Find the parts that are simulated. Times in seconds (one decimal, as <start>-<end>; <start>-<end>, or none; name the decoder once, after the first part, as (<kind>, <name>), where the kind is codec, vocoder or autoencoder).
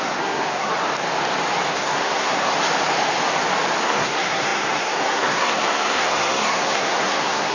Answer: 0.0-0.7 (codec, SNAC); 1.7-2.5; 3.8-7.5